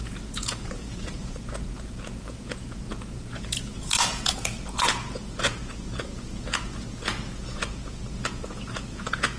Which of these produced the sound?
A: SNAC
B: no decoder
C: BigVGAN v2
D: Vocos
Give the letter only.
D